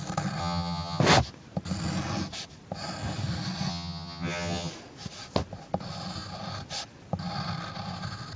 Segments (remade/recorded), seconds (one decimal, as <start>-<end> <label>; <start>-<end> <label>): 0.0-0.4 recorded; 0.4-1.0 remade; 1.0-3.7 recorded; 3.7-4.7 remade; 4.7-8.4 recorded